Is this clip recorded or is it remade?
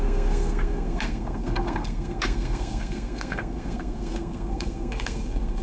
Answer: remade